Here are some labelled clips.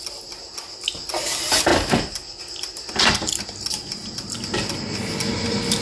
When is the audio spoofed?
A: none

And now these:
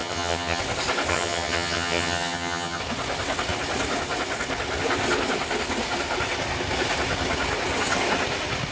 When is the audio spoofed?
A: 0.0-0.6 (vocoder, HiFi-GAN); 1.1-2.8

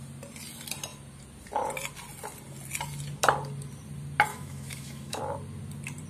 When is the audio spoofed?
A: 4.3-5.2 (autoencoder, DAC-VAE)

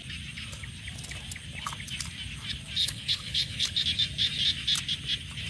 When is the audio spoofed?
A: 2.8-3.7 (codec, HILCodec)

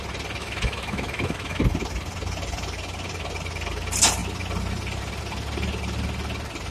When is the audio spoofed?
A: 0.4-1.6 (autoencoder, DAC-VAE)

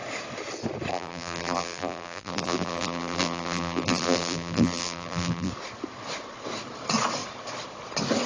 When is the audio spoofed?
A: 0.9-5.5 (vocoder, BigVGAN v2)

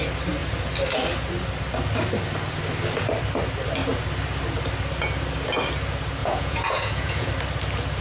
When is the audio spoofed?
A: 6.2-7.3 (vocoder, Vocos)

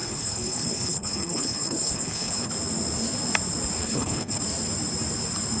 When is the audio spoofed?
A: 0.0-2.5 (codec, HILCodec); 3.8-4.4